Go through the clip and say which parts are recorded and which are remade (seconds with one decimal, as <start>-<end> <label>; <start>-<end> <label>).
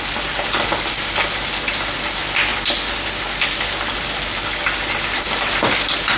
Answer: 0.0-6.2 recorded